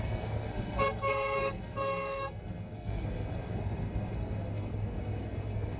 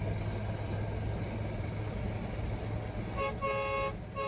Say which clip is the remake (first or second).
first